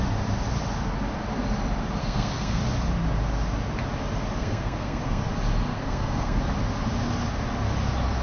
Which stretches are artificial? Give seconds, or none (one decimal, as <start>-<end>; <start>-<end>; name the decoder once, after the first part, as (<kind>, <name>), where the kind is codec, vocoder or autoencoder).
2.0-2.6 (codec, SNAC); 4.4-5.2; 5.7-6.4

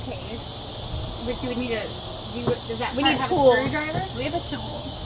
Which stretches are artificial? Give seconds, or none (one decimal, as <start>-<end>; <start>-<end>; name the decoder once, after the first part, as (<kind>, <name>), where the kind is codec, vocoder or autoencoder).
4.5-5.0 (autoencoder, DAC-VAE)

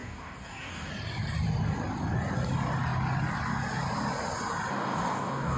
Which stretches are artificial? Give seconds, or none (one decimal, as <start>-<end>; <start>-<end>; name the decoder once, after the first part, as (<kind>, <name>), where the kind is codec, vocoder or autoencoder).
0.0-0.9 (codec, DAC); 4.7-5.6

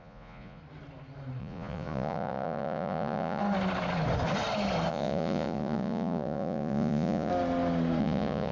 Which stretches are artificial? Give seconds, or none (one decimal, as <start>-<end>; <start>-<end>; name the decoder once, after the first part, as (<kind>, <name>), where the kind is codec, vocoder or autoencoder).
0.0-0.6 (vocoder, Vocos); 1.4-3.4; 4.9-7.3; 8.0-8.5

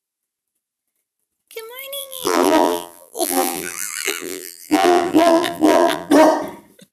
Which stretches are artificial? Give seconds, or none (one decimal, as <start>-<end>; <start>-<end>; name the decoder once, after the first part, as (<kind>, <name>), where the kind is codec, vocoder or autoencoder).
2.0-6.1 (vocoder, BigVGAN v2)

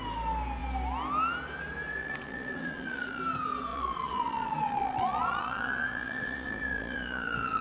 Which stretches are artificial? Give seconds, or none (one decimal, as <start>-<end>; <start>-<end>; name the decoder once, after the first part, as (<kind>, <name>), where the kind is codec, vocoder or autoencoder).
2.0-3.2 (vocoder, Vocos); 3.7-7.6

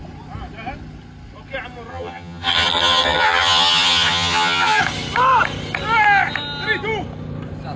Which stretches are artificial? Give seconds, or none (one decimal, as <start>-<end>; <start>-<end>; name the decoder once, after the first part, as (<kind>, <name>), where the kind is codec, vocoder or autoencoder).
1.9-4.8 (vocoder, HiFi-GAN)